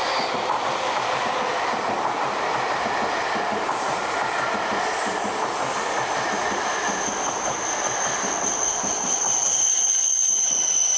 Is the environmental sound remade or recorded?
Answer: recorded